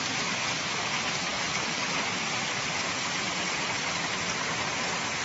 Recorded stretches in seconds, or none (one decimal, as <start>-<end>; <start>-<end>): 0.0-1.3; 1.9-5.2